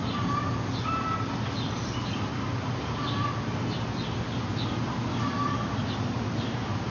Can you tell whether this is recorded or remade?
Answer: recorded